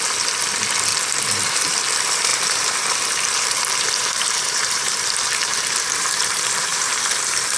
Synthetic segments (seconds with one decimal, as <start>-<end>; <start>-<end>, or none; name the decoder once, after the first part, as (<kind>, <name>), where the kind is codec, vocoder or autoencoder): 0.9-1.8 (vocoder, BigVGAN v2); 2.3-6.3; 6.7-7.6